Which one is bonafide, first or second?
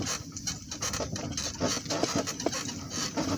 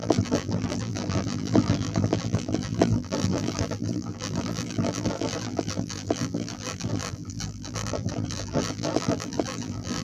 first